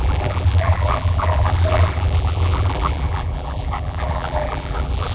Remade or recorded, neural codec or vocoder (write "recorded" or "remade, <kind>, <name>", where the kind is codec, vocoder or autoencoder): remade, vocoder, BigVGAN v2